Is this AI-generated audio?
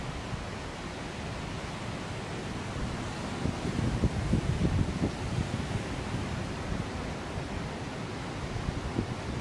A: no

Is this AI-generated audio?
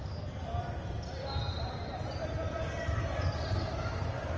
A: no